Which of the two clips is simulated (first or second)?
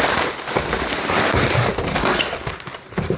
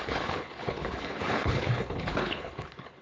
second